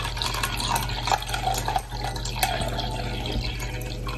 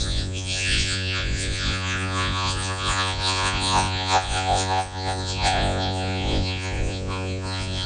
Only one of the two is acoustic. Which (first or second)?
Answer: first